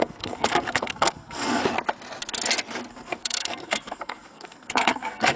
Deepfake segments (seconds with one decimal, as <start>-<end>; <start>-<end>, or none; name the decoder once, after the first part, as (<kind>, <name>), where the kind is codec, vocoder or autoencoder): 0.0-1.6 (codec, SNAC); 2.9-5.4